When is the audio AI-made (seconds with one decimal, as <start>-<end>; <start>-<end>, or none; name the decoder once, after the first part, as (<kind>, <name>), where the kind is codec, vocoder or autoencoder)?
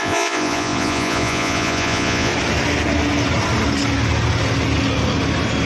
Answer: 0.0-2.3 (vocoder, Vocos)